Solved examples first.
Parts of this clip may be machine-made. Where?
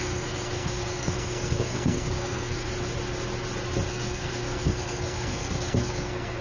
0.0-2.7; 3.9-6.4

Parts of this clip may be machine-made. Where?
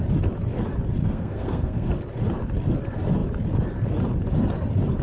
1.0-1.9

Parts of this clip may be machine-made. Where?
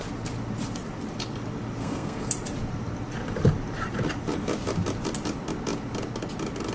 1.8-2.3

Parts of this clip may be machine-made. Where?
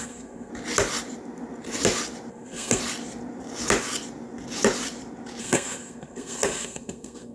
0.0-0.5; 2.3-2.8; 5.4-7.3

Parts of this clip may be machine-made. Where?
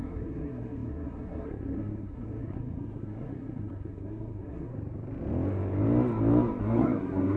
0.0-4.7; 6.6-7.4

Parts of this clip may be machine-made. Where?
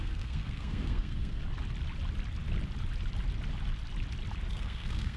0.0-1.4; 4.5-5.2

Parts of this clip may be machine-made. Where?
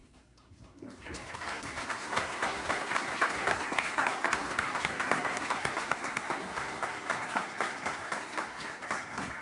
0.0-9.4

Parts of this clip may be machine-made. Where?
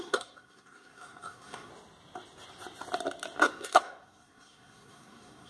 0.0-1.7; 3.5-5.5